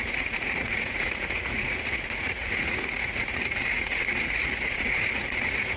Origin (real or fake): fake